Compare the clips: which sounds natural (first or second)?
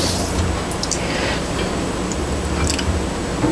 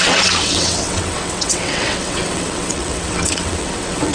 first